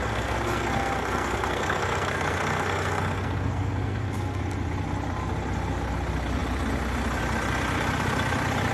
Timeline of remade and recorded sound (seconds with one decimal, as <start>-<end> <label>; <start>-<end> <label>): 0.0-4.4 remade; 4.4-8.7 recorded